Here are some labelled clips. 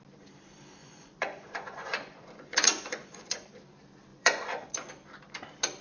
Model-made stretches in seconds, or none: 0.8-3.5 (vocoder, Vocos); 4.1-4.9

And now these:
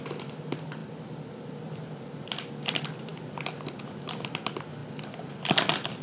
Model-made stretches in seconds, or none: none

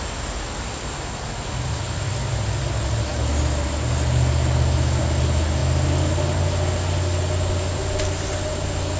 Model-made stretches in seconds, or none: none

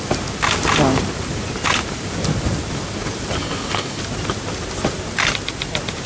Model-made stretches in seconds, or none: 3.4-4.0 (codec, DAC)